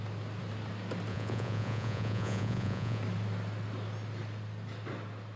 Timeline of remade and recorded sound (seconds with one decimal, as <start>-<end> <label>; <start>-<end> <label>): 0.0-1.1 recorded; 1.1-3.0 remade; 3.0-5.4 recorded